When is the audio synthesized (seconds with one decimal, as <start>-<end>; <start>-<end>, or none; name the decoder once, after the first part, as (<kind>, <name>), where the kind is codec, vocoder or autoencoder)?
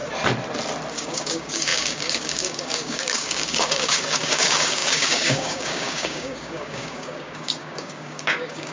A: 0.9-8.7 (codec, DAC)